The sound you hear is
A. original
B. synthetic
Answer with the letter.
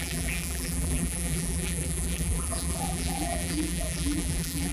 B